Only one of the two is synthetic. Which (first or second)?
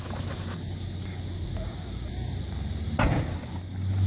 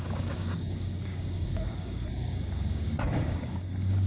second